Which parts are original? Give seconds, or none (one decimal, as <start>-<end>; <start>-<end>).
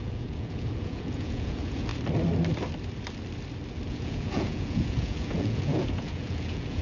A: 1.9-3.9